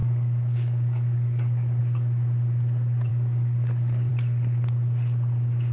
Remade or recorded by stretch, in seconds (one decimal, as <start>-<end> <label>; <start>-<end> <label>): 0.0-1.8 remade; 1.8-3.1 recorded; 3.1-4.1 remade; 4.1-5.7 recorded